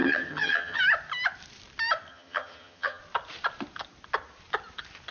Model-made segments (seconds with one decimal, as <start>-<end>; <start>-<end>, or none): 0.0-0.8; 2.1-3.0